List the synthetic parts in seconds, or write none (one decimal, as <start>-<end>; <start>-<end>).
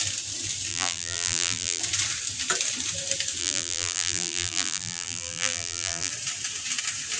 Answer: 0.7-1.8; 3.4-6.1